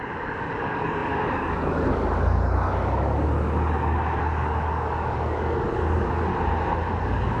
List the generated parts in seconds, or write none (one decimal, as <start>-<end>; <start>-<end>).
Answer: 0.0-6.3; 7.0-7.4